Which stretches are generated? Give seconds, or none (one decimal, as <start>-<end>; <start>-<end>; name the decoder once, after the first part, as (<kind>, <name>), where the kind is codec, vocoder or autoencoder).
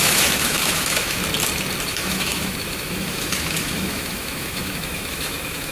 0.0-1.2 (autoencoder, DAC-VAE); 1.9-5.7